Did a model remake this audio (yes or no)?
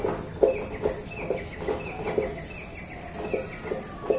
no